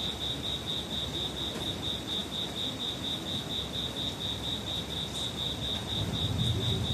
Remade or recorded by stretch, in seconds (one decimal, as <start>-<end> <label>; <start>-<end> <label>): 0.0-6.9 recorded